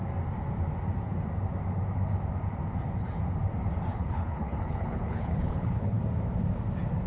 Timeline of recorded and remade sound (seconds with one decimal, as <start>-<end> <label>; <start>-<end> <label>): 0.0-3.9 recorded; 3.9-6.0 remade; 6.0-7.1 recorded